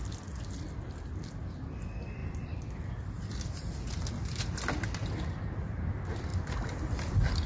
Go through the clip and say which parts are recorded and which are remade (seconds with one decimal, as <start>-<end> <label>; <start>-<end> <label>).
0.0-2.2 recorded; 2.2-2.9 remade; 2.9-6.3 recorded; 6.3-7.1 remade; 7.1-7.5 recorded